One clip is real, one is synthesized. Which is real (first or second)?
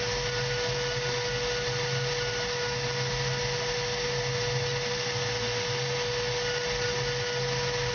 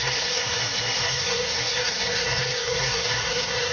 first